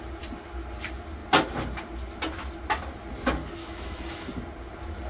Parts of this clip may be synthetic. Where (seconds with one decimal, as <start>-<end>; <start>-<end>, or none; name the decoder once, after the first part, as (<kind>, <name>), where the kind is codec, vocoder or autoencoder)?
3.6-4.3 (autoencoder, DAC-VAE)